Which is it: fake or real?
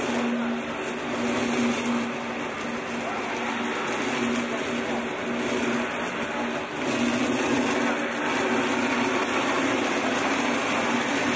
real